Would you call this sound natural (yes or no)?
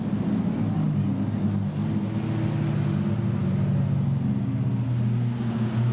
yes